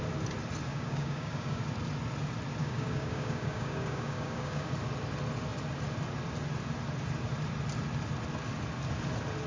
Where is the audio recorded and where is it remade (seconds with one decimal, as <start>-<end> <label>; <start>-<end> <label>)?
0.0-0.7 recorded; 0.7-1.6 remade; 1.6-2.6 recorded; 2.6-4.7 remade; 4.7-9.5 recorded